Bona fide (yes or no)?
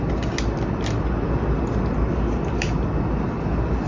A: yes